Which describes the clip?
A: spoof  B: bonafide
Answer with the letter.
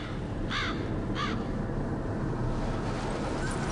B